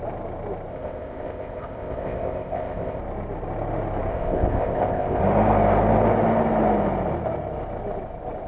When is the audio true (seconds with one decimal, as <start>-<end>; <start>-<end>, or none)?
0.0-0.7; 3.0-4.1; 5.2-8.5